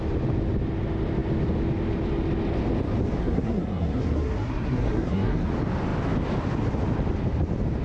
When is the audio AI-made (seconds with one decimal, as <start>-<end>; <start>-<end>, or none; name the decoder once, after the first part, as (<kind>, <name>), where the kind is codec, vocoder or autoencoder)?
3.2-5.5 (codec, SNAC)